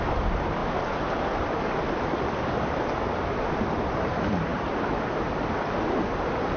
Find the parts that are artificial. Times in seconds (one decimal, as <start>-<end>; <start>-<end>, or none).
none